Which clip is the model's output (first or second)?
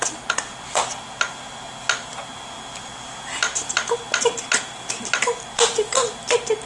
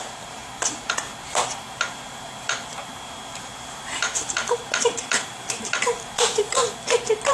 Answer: second